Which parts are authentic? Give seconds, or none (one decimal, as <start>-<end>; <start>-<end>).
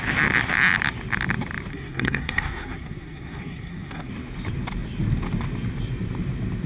0.0-1.7; 4.1-6.7